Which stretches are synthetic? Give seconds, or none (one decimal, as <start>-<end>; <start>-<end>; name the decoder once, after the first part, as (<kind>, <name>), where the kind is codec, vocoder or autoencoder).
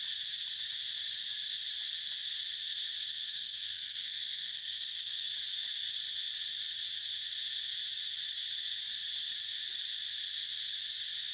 3.1-5.3 (codec, SNAC)